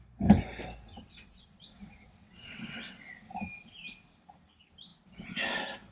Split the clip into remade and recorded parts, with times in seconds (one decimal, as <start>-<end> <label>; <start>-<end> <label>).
0.0-0.9 recorded; 0.9-3.0 remade; 3.0-5.9 recorded